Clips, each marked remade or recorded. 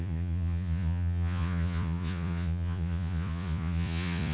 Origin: remade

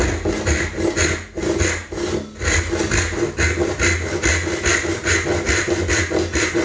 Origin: recorded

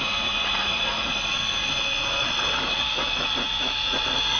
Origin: remade